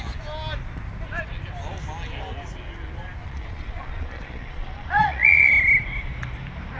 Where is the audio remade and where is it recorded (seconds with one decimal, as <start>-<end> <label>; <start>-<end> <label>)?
0.0-3.2 recorded; 3.2-5.5 remade; 5.5-6.8 recorded